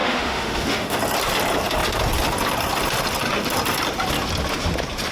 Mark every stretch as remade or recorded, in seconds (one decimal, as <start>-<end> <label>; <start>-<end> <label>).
0.0-1.0 remade; 1.0-5.1 recorded